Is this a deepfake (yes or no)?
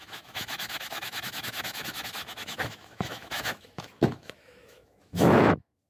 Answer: yes